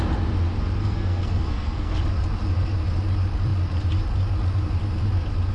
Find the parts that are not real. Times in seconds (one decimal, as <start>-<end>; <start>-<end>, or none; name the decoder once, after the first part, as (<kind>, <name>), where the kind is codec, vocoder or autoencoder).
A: 0.8-2.0 (codec, SNAC)

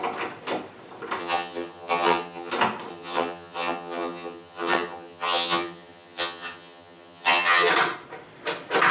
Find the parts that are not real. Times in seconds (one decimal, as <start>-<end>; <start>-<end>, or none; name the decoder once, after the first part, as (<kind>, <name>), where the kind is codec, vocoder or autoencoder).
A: 1.2-2.5 (vocoder, HiFi-GAN); 2.9-7.7

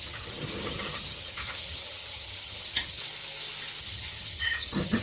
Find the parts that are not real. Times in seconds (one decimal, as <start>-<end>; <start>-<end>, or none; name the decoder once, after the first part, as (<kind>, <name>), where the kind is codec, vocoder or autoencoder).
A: 0.0-3.0 (vocoder, HiFi-GAN); 3.8-5.0

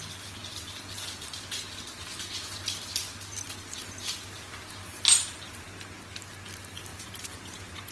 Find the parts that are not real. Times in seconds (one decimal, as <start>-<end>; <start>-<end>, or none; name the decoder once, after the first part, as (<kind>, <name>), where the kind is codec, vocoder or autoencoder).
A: 6.9-7.9 (vocoder, Vocos)